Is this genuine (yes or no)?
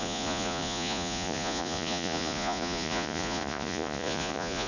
no